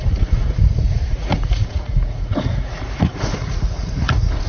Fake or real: fake